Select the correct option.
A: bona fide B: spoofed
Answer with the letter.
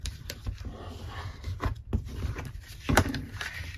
A